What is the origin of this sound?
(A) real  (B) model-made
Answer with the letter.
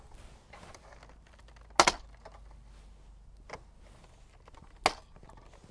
A